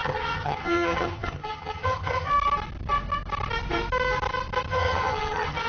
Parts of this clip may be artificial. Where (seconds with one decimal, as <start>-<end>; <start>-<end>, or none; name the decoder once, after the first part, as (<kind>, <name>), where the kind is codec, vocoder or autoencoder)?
0.0-2.3 (vocoder, HiFi-GAN); 4.7-5.7